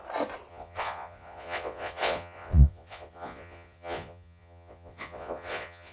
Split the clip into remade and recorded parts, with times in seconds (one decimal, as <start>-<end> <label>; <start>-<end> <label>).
0.0-0.5 recorded; 0.5-5.9 remade

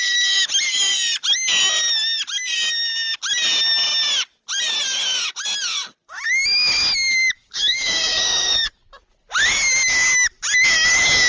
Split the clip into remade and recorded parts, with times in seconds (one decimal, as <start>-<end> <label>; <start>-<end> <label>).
0.0-7.4 recorded; 7.4-8.7 remade; 8.7-11.3 recorded

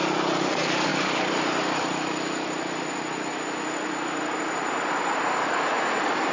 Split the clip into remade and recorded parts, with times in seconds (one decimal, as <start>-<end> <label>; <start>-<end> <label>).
0.0-0.9 remade; 0.9-4.4 recorded; 4.4-6.3 remade

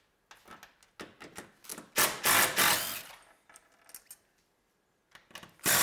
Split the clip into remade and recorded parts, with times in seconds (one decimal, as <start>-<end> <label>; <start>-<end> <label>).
0.0-5.8 recorded

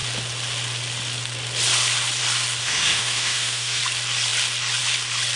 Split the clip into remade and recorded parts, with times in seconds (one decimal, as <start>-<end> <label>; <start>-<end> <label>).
0.0-2.6 recorded; 2.6-3.8 remade; 3.8-5.4 recorded

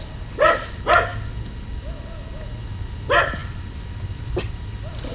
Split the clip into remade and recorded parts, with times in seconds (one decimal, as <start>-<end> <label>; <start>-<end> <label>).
0.0-3.4 recorded; 3.4-5.1 remade

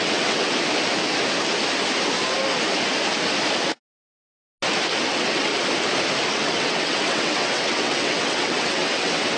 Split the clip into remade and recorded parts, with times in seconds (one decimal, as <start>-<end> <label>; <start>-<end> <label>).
0.0-0.5 remade; 0.5-5.1 recorded; 5.1-5.5 remade; 5.5-6.3 recorded; 6.3-9.4 remade